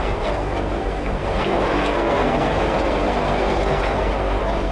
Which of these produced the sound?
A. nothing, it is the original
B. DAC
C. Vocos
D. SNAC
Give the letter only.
D